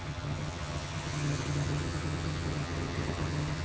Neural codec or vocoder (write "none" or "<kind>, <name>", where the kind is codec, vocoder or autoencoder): vocoder, HiFi-GAN